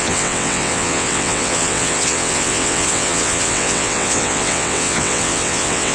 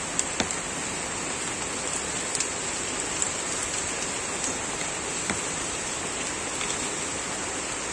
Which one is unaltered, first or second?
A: second